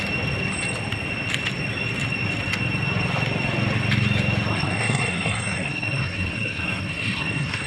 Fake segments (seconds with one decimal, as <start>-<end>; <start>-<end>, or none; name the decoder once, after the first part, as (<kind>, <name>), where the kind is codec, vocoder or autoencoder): 4.5-7.7 (codec, SNAC)